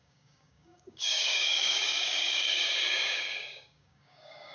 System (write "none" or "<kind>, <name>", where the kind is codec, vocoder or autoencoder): codec, DAC